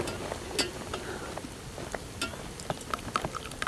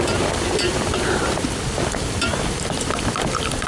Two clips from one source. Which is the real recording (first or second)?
first